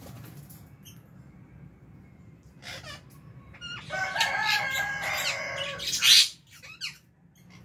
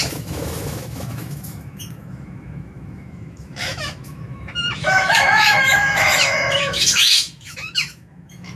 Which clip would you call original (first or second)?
first